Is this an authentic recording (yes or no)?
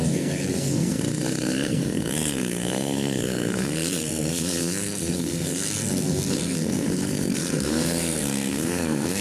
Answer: no